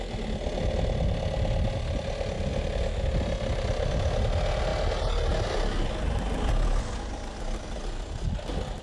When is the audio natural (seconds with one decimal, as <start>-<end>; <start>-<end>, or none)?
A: 0.0-8.8